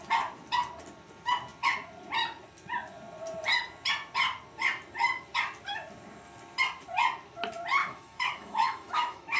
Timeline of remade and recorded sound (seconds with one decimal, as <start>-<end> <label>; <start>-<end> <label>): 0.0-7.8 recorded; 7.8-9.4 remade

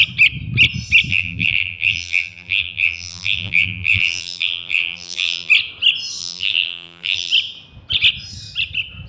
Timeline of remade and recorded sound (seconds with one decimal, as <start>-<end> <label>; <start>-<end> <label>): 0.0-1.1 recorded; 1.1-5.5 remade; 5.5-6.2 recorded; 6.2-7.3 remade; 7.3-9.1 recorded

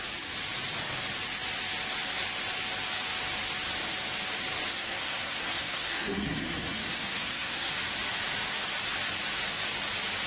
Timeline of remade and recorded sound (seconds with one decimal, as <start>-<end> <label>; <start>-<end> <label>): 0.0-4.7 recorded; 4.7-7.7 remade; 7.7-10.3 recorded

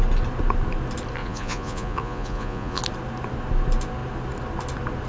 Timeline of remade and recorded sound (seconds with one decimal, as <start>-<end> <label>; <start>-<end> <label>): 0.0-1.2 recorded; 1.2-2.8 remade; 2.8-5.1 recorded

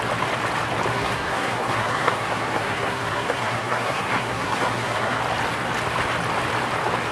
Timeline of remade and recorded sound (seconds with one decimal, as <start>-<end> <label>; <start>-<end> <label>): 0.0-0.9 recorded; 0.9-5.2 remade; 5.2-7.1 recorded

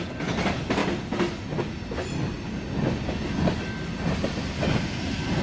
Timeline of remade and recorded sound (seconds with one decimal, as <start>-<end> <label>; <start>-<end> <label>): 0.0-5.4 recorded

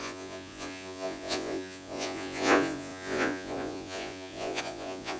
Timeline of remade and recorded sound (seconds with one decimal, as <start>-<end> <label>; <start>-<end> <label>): 0.0-5.2 remade

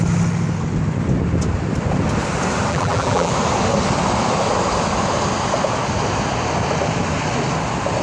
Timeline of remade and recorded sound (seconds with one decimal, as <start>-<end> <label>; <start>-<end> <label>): 0.0-2.7 recorded; 2.7-3.3 remade; 3.3-8.0 recorded